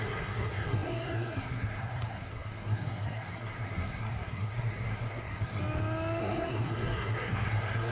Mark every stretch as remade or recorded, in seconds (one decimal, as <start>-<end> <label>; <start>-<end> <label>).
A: 0.0-5.6 remade; 5.6-6.2 recorded; 6.2-7.9 remade